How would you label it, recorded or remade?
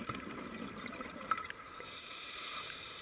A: remade